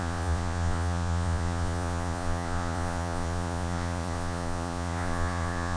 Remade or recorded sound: remade